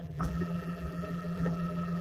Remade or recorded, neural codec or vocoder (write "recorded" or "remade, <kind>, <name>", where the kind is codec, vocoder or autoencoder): remade, vocoder, BigVGAN v2